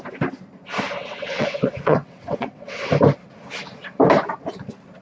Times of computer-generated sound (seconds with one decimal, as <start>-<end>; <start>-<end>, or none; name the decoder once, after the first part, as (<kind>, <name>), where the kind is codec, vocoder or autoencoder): 1.0-2.9 (vocoder, WaveNeXt)